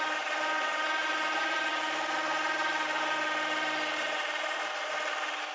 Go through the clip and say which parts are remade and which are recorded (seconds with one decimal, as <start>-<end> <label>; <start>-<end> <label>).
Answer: 0.0-5.5 recorded